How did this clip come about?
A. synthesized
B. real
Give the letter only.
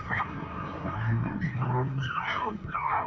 A